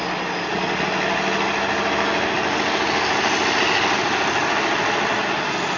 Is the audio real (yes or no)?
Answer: yes